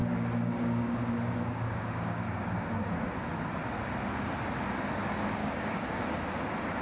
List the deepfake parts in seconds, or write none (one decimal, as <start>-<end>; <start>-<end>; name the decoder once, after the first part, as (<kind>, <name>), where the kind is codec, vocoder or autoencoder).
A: 0.0-2.9 (codec, DAC); 5.4-6.0